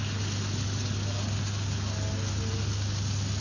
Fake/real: real